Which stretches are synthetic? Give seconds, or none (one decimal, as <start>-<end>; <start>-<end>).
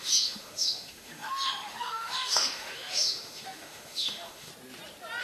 0.0-4.5